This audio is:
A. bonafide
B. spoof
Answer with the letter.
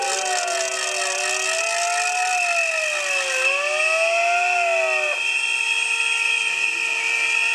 A